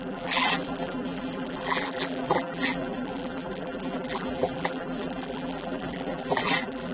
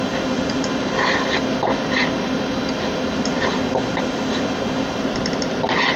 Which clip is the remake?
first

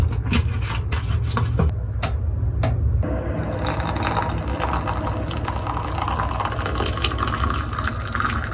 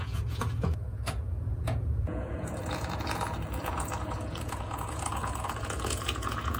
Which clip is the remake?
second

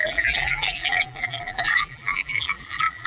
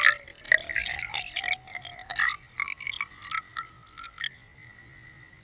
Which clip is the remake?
first